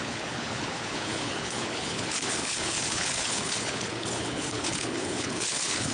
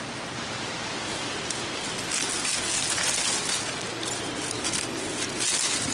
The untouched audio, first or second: second